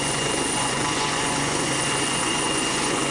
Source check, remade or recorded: remade